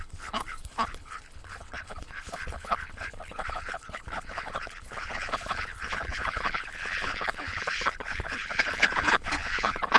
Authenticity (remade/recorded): remade